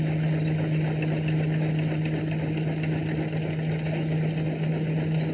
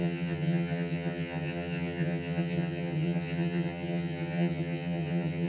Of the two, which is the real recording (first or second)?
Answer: first